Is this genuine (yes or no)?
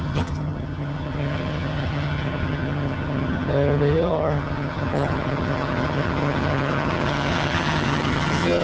no